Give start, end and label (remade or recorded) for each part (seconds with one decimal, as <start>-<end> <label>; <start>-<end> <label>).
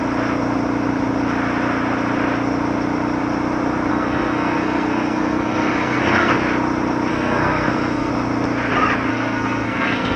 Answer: 0.0-3.9 recorded; 3.9-6.3 remade; 6.3-7.1 recorded; 7.1-8.1 remade; 8.1-9.1 recorded; 9.1-10.2 remade